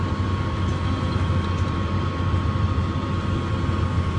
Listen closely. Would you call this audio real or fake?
real